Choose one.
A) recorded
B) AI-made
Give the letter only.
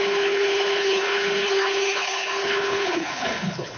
B